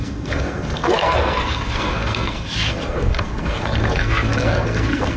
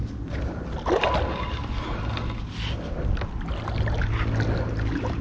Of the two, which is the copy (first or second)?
first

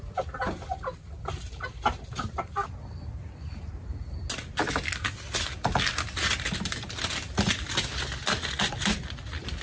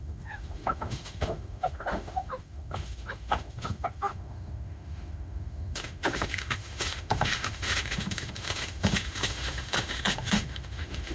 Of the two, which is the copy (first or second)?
second